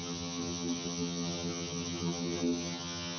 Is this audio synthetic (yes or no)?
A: yes